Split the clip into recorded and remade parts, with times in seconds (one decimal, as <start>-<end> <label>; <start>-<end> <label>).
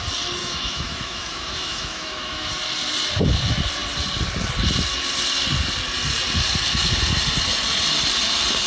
0.0-0.4 recorded; 0.4-2.5 remade; 2.5-8.7 recorded